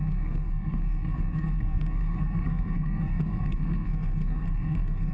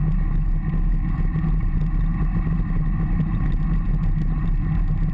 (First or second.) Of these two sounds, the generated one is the first